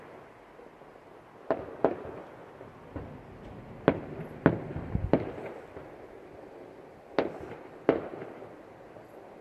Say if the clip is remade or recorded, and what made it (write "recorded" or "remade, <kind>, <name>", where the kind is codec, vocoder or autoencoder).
recorded